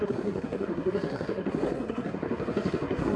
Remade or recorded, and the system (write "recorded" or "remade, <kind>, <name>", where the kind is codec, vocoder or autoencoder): remade, codec, SNAC